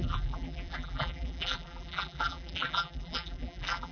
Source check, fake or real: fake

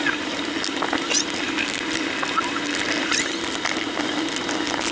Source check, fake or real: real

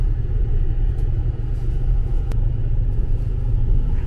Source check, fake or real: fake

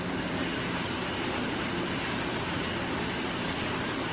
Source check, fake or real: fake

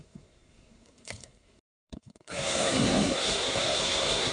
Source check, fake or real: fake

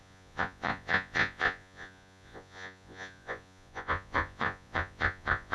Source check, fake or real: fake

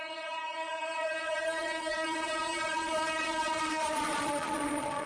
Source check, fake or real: fake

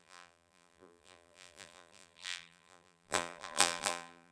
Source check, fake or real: fake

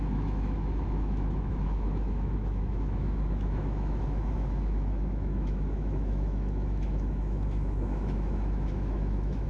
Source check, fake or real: fake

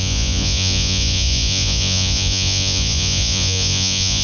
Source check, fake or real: fake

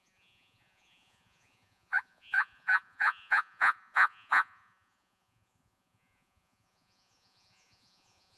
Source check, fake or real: fake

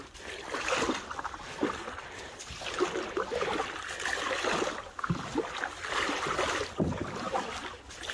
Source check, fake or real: real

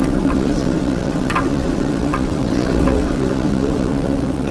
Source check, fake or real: fake